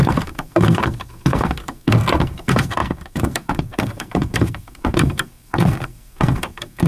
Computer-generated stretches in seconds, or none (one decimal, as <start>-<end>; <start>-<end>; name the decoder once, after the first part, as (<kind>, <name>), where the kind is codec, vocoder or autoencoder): 0.0-6.9 (codec, SNAC)